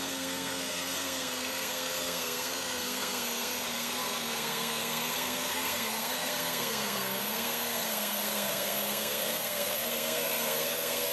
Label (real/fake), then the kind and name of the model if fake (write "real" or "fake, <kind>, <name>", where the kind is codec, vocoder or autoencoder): fake, codec, SNAC